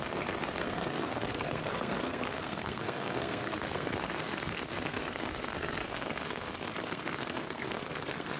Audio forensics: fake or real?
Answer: fake